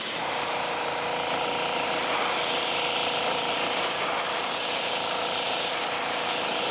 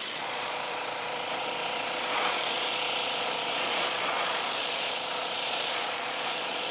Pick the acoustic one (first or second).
first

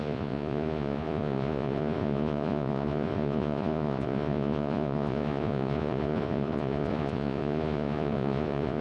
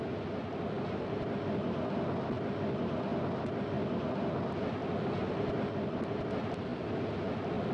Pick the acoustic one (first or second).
second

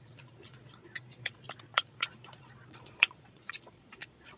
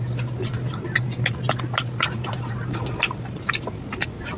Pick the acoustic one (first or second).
second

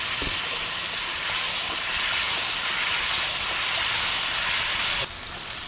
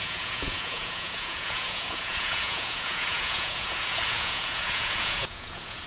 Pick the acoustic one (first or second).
first